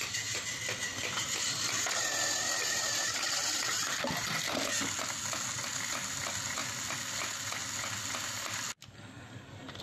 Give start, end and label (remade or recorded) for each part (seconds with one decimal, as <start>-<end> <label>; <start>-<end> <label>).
0.0-0.9 recorded; 0.9-4.1 remade; 4.1-9.8 recorded